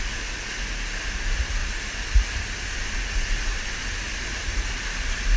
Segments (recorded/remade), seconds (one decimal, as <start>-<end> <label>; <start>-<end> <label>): 0.0-5.4 recorded